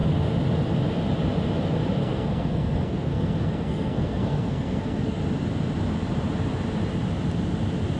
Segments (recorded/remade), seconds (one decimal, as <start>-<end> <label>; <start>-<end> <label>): 0.0-2.0 recorded; 2.0-5.2 remade; 5.2-8.0 recorded